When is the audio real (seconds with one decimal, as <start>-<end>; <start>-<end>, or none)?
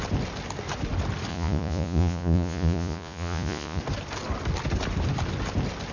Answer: 0.0-1.3; 3.8-5.9